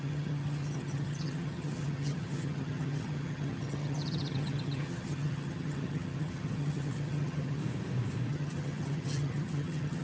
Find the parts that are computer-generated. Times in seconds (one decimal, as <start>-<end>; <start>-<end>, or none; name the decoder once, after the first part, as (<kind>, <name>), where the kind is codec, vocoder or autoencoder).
0.0-7.6 (vocoder, HiFi-GAN); 8.3-10.0